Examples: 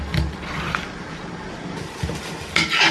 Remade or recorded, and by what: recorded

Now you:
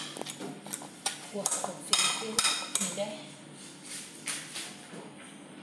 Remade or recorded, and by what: recorded